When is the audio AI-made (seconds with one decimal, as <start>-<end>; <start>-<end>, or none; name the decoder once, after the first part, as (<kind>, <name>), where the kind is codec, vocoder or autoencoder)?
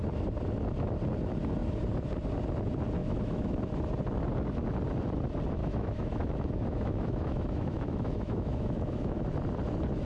3.0-3.7 (autoencoder, DAC-VAE); 5.6-9.2